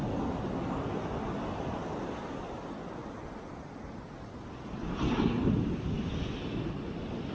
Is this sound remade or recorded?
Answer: recorded